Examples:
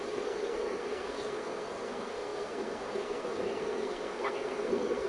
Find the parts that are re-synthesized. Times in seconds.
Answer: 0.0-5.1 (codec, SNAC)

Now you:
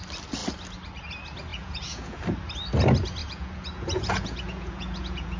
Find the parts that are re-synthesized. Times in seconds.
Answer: 1.5-2.2 (vocoder, Vocos); 3.2-5.4

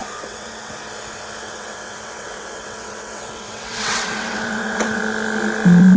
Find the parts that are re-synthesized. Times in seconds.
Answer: 0.0-0.7 (vocoder, WaveNeXt); 1.4-5.0